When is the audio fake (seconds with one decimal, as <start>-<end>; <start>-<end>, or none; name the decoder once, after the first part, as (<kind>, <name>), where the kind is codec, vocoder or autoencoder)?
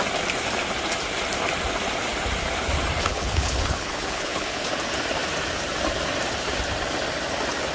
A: 3.1-4.7 (codec, HILCodec)